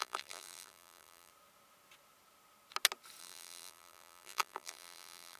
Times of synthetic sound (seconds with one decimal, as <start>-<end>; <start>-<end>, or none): 0.0-1.3; 3.2-5.4

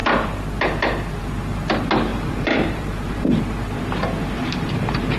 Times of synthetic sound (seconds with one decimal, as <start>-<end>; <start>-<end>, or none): 2.1-3.4; 4.4-5.2

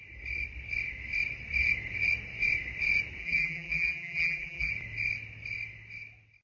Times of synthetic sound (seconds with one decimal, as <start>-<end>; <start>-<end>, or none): 3.2-4.7

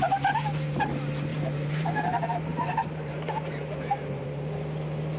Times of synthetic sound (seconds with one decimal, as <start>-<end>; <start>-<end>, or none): 1.3-1.9; 2.5-4.5

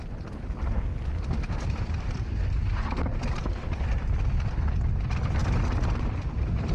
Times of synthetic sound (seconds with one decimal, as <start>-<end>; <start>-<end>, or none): 0.0-0.9; 4.9-5.4; 5.9-6.7